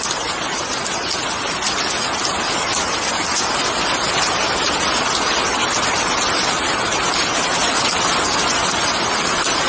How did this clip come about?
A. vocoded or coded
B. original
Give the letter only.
B